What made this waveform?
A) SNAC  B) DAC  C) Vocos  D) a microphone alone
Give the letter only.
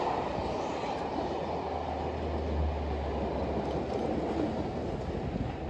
D